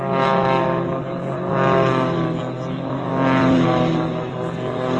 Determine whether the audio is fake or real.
real